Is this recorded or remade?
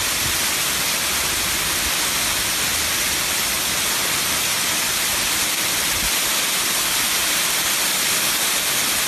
recorded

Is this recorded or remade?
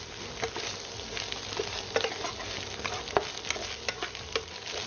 recorded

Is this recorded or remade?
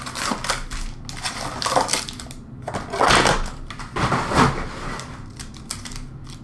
recorded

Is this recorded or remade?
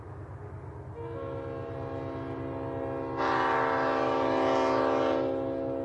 recorded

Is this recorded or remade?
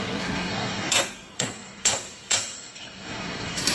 remade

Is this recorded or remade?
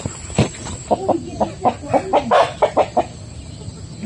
recorded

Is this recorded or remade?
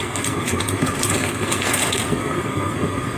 remade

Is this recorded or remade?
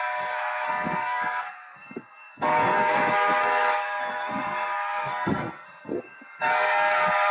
remade